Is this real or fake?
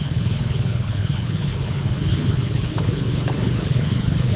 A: fake